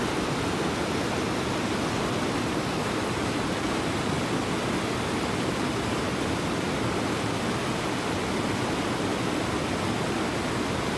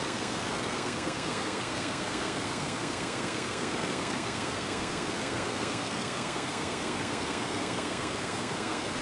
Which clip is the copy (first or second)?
second